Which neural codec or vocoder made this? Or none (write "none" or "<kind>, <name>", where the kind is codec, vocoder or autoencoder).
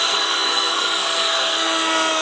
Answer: codec, SNAC